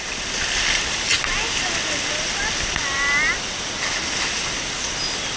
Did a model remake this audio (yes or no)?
no